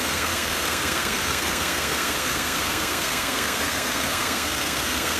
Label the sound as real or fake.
fake